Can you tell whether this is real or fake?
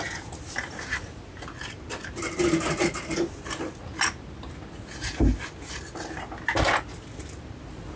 real